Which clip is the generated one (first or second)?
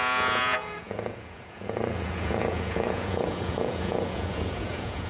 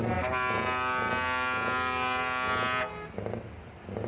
first